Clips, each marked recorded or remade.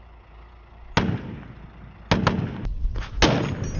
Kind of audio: recorded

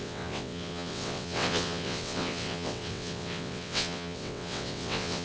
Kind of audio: remade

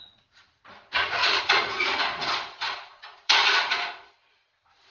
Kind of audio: remade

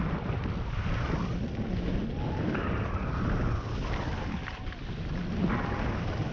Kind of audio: recorded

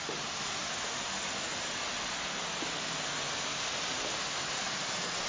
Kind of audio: recorded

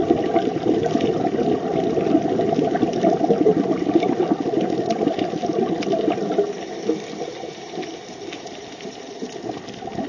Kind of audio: recorded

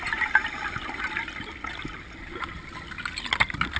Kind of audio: recorded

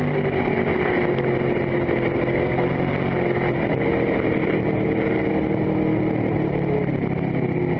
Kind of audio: recorded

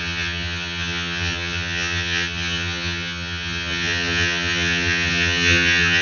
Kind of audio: remade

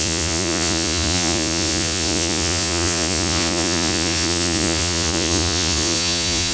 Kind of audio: remade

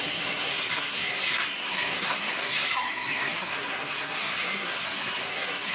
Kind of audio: remade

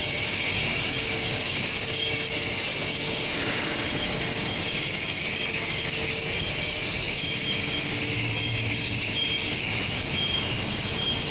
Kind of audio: remade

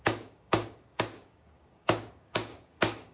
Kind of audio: remade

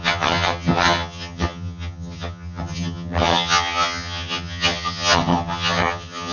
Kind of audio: remade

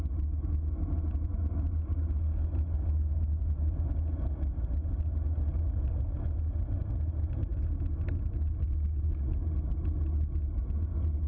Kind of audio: recorded